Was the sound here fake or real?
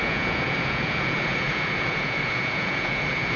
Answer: fake